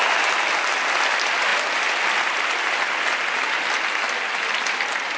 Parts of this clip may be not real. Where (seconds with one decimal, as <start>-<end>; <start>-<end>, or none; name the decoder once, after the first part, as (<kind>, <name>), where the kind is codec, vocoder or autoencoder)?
none